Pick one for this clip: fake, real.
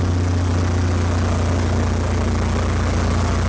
real